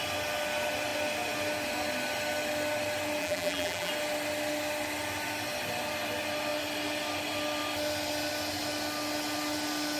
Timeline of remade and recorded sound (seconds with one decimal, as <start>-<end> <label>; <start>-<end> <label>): 0.0-3.2 recorded; 3.2-3.9 remade; 3.9-10.0 recorded